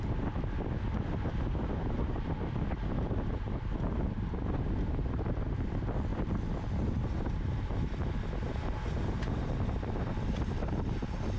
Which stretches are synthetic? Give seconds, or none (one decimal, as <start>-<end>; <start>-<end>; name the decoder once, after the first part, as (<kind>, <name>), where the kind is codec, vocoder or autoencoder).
none